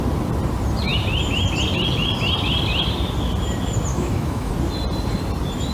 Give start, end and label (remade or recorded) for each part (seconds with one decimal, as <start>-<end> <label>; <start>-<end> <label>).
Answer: 0.0-3.9 recorded; 3.9-4.5 remade; 4.5-5.7 recorded